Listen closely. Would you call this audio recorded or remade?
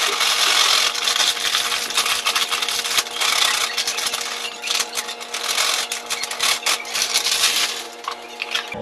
recorded